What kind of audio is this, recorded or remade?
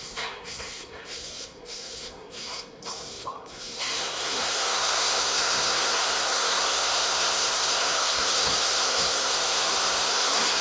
remade